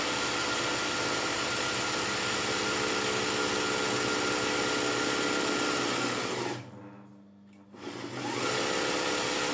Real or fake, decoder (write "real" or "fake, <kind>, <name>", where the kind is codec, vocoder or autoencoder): real